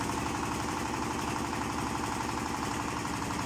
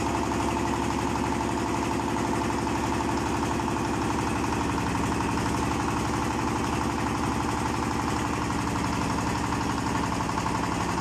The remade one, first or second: first